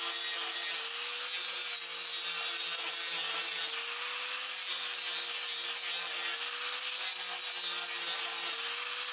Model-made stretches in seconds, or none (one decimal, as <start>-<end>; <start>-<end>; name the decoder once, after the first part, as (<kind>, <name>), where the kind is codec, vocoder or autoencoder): none